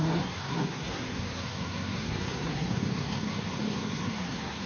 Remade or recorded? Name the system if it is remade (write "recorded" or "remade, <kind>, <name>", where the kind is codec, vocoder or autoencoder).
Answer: remade, codec, SNAC